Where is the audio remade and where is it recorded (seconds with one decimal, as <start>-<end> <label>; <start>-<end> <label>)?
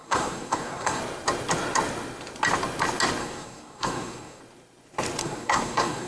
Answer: 0.0-1.0 remade; 1.0-3.2 recorded; 3.2-4.4 remade; 4.4-5.2 recorded; 5.2-6.1 remade